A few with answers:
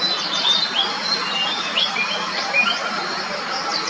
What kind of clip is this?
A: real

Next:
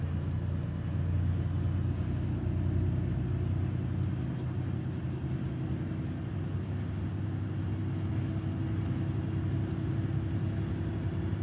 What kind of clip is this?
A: real